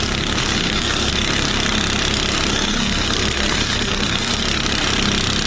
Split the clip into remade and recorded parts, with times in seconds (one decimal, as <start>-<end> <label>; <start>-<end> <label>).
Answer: 0.0-0.4 recorded; 0.4-1.1 remade; 1.1-2.5 recorded; 2.5-4.4 remade; 4.4-5.5 recorded